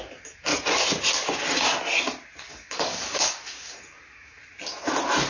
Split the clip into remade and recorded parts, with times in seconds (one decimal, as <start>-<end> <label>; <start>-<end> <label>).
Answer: 0.0-0.5 remade; 0.5-2.5 recorded; 2.5-4.4 remade; 4.4-5.3 recorded